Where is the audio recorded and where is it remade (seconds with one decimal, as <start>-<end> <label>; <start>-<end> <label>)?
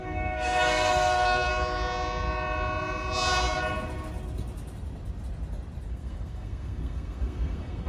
0.0-1.5 remade; 1.5-5.9 recorded; 5.9-7.9 remade